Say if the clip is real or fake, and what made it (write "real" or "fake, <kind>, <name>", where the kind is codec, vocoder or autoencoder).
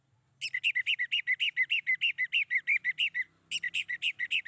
real